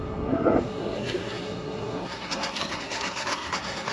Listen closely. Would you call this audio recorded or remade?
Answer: remade